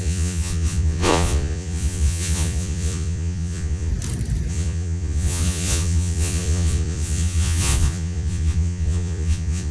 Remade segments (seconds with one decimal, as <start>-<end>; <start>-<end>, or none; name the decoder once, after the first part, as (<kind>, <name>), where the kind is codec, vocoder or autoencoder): 0.0-3.9 (vocoder, Vocos); 4.5-9.7